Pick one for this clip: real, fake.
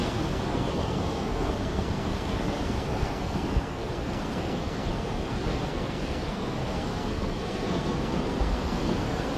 fake